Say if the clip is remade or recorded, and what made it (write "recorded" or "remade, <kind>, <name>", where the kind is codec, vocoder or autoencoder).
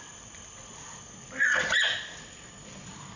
recorded